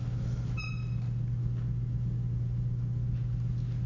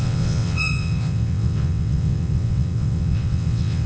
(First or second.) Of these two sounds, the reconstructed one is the second